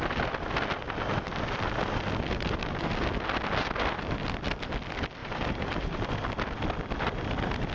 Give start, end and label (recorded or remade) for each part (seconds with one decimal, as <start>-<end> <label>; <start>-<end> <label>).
0.0-5.2 recorded; 5.2-6.1 remade; 6.1-7.7 recorded